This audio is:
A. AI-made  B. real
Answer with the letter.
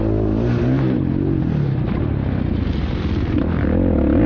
B